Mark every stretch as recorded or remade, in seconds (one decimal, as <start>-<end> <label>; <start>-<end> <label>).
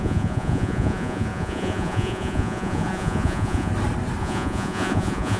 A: 0.0-3.7 remade; 3.7-4.2 recorded; 4.2-5.4 remade